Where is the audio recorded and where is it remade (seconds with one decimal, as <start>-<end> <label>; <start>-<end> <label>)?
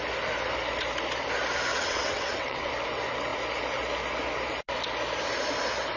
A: 0.0-1.7 recorded; 1.7-2.7 remade; 2.7-6.0 recorded